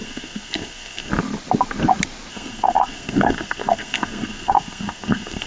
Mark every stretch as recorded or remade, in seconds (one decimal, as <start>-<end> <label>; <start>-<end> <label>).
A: 0.0-1.1 remade; 1.1-2.3 recorded; 2.3-5.5 remade